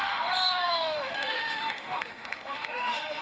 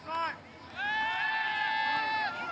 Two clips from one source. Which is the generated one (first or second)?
first